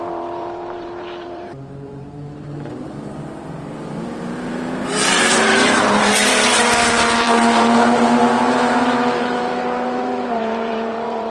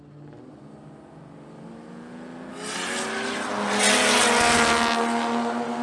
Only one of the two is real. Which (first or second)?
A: second